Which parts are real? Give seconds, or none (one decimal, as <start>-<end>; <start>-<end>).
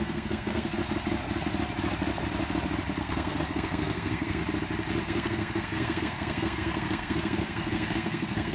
0.8-3.0; 4.4-5.0